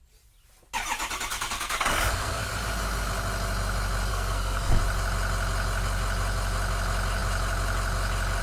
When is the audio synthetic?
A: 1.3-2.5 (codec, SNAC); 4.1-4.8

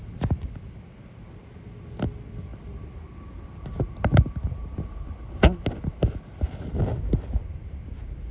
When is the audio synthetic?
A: none

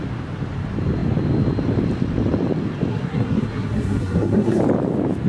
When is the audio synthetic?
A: 2.9-4.6 (codec, SNAC)

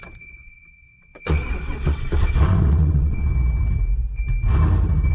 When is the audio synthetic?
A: 0.0-3.3 (vocoder, WaveNeXt)